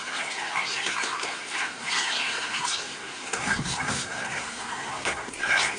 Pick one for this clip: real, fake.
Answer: fake